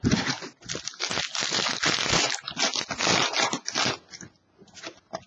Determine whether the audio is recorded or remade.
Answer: recorded